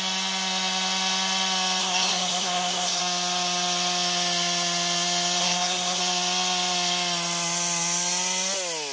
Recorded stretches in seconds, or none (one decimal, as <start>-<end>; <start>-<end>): 0.0-1.8; 3.0-5.4; 6.0-8.9